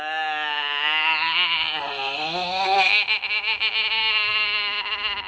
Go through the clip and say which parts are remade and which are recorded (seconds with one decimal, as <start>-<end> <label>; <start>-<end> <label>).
0.0-5.3 recorded